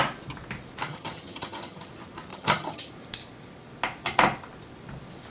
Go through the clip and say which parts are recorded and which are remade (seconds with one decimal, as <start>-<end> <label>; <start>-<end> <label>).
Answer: 0.0-0.9 recorded; 0.9-1.9 remade; 1.9-2.3 recorded; 2.3-2.9 remade; 2.9-5.3 recorded